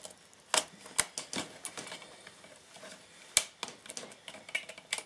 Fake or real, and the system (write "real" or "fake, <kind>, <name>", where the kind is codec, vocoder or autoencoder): real